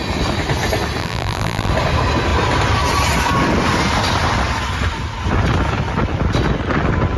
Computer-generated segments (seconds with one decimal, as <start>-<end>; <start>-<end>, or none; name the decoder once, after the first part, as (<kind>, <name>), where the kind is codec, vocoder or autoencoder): 1.0-1.7 (vocoder, BigVGAN v2)